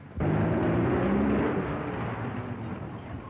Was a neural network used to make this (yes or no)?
no